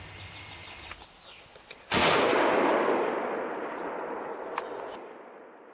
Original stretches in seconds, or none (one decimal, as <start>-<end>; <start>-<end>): 0.0-5.7